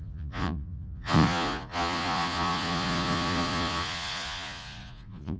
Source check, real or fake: fake